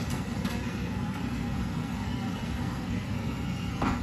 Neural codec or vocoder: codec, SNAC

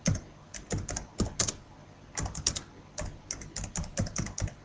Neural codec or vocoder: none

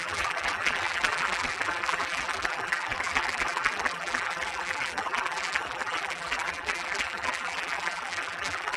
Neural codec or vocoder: vocoder, BigVGAN v2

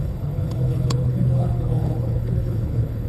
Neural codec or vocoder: codec, HILCodec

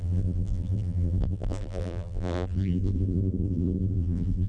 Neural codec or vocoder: vocoder, BigVGAN v2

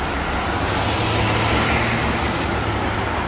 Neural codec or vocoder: none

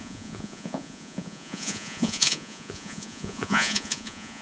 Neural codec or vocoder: vocoder, Vocos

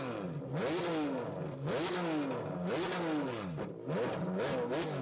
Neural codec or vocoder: none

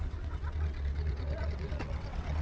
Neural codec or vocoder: vocoder, WaveNeXt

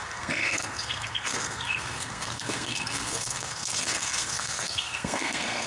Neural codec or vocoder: codec, SNAC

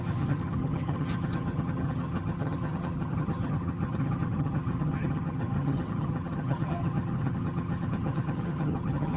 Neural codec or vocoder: vocoder, HiFi-GAN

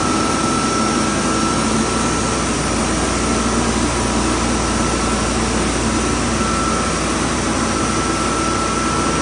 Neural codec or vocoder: none